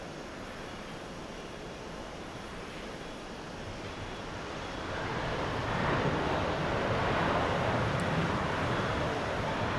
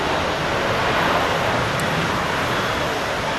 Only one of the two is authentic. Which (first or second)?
second